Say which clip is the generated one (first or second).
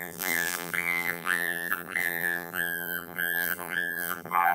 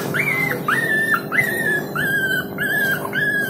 first